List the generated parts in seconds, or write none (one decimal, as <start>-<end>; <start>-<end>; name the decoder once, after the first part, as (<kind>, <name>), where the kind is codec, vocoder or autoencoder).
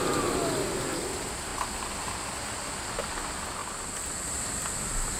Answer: none